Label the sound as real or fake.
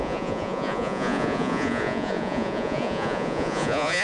fake